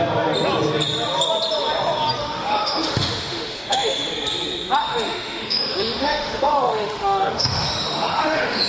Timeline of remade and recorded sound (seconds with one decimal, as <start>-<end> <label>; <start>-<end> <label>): 0.0-2.2 recorded; 2.2-4.1 remade; 4.1-4.8 recorded; 4.8-8.7 remade